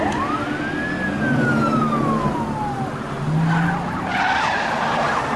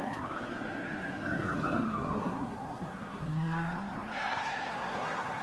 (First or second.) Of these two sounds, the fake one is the second